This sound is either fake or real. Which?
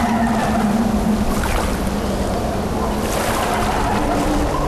real